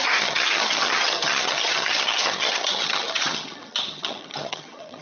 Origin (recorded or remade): remade